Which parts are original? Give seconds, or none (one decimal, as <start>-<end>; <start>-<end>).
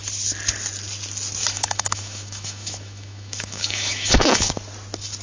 0.0-1.4; 4.5-5.2